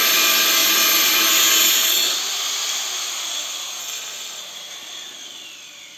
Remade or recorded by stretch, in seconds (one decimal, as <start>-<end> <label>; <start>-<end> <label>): 0.0-3.8 recorded; 3.8-4.4 remade; 4.4-6.0 recorded